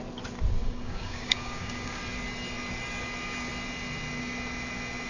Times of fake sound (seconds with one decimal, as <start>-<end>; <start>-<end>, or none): 0.6-2.0